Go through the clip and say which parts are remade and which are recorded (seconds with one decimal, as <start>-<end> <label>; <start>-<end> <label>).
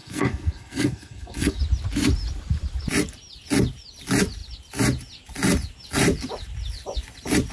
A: 0.0-1.6 remade; 1.6-7.5 recorded